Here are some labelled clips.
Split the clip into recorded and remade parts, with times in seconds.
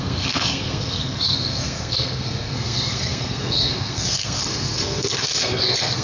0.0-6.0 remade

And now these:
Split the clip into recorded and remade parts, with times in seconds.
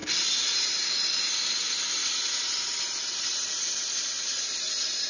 0.0-5.1 recorded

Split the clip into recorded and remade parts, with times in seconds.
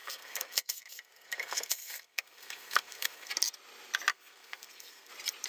0.0-3.3 remade; 3.3-4.1 recorded; 4.1-5.1 remade; 5.1-5.5 recorded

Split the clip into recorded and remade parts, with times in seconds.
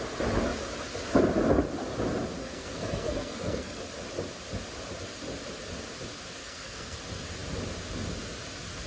0.0-2.4 recorded; 2.4-3.8 remade; 3.8-6.4 recorded; 6.4-7.0 remade; 7.0-8.9 recorded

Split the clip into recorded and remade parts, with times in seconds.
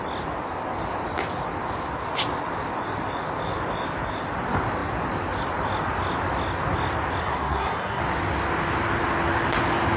0.0-7.2 recorded; 7.2-8.0 remade; 8.0-10.0 recorded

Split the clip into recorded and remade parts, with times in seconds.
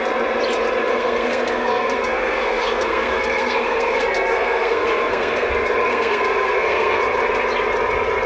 0.0-0.9 recorded; 0.9-5.5 remade; 5.5-5.9 recorded; 5.9-7.0 remade; 7.0-8.3 recorded